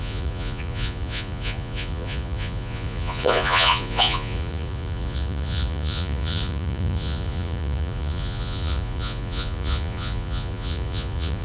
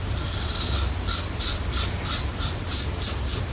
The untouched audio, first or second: second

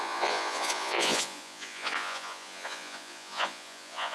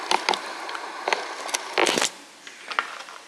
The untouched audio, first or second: second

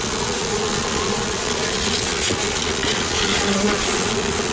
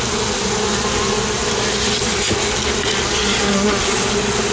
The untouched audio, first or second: second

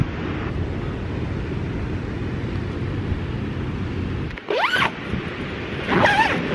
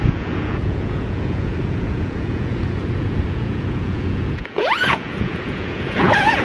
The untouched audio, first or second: first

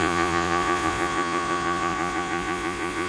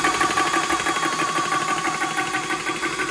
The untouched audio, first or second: second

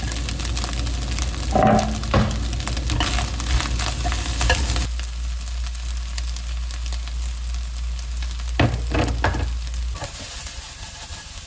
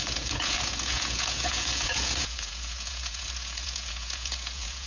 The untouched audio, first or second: first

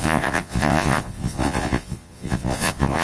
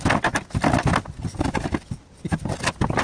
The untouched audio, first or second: second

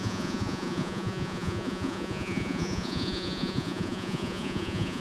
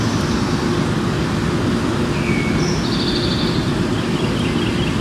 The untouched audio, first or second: second